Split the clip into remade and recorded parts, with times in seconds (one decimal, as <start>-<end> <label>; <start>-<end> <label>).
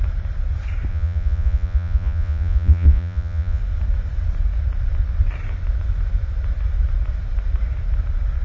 0.0-0.9 recorded; 0.9-3.6 remade; 3.6-8.4 recorded